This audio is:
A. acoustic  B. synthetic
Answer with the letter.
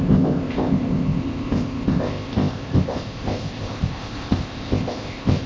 B